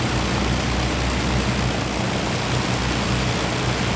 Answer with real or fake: real